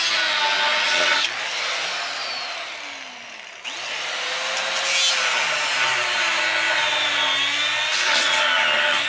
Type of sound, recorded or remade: recorded